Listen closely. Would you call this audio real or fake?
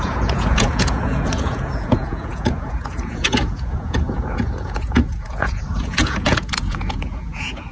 fake